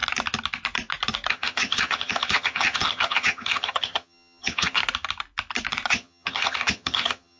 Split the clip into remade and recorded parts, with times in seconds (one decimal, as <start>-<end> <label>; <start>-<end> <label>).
0.0-1.3 recorded; 1.3-4.8 remade; 4.8-5.9 recorded; 5.9-7.4 remade